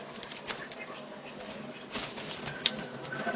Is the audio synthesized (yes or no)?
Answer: no